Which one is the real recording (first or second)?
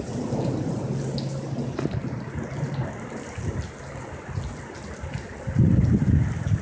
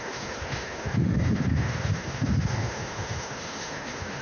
first